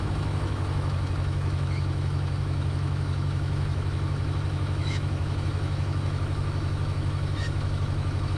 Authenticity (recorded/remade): remade